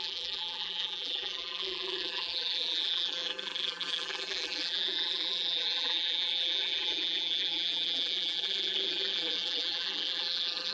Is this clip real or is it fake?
fake